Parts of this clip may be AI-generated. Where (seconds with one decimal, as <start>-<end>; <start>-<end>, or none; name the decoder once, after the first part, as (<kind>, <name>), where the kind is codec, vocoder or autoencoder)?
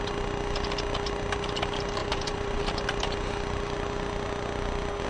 2.0-2.6 (vocoder, Vocos)